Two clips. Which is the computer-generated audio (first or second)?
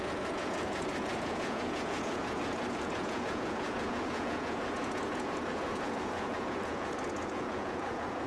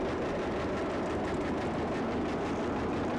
first